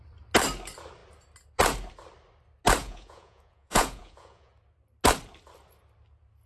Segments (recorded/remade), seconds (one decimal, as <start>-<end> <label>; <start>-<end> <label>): 0.0-2.8 recorded; 2.8-4.5 remade; 4.5-6.5 recorded